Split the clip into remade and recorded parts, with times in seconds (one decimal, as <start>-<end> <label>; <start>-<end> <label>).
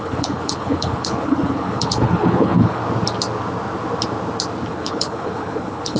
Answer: 0.0-2.8 remade; 2.8-4.7 recorded; 4.7-6.0 remade